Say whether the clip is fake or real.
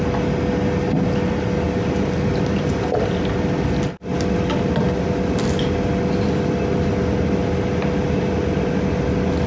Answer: real